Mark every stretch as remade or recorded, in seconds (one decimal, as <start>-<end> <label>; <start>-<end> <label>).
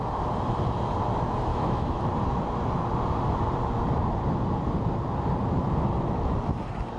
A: 0.0-1.5 recorded; 1.5-2.0 remade; 2.0-7.0 recorded